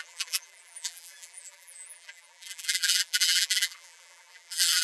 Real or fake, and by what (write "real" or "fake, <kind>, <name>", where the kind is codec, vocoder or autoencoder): fake, vocoder, BigVGAN v2